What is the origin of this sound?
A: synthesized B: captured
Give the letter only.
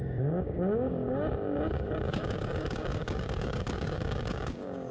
A